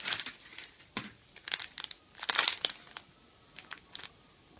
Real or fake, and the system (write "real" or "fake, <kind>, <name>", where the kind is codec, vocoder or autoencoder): real